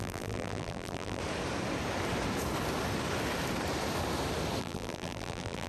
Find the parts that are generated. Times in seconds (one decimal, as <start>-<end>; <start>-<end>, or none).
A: 0.0-1.2; 4.6-5.7